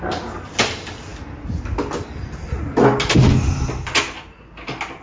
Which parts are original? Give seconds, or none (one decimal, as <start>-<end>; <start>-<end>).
0.0-5.0